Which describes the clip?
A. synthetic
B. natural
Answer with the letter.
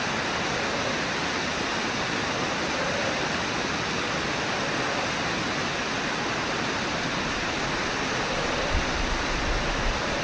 B